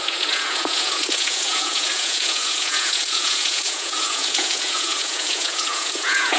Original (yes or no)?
no